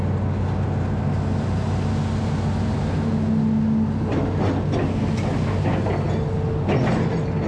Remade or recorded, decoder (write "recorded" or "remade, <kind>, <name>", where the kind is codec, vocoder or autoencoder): recorded